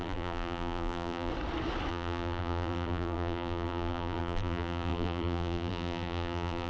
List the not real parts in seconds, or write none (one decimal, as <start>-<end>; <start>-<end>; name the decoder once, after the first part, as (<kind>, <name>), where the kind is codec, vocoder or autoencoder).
0.0-1.3 (vocoder, BigVGAN v2); 1.9-6.7

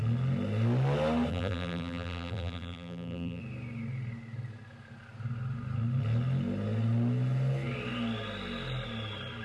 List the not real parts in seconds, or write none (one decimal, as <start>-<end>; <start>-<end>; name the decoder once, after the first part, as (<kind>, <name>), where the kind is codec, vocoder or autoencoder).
1.3-3.4 (vocoder, BigVGAN v2)

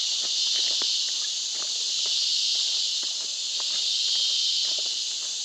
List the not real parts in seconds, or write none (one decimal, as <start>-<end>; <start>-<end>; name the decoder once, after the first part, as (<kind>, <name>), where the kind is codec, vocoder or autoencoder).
0.5-4.9 (vocoder, BigVGAN v2)

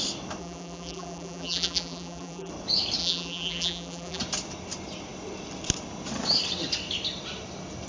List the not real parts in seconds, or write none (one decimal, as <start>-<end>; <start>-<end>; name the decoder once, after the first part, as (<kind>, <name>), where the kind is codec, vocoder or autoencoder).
0.4-2.5 (vocoder, BigVGAN v2); 3.0-4.2

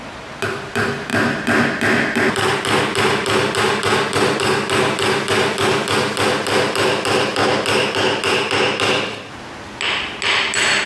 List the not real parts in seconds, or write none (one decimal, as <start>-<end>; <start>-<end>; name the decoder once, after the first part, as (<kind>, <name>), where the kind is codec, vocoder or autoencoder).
none